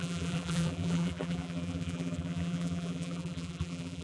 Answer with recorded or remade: remade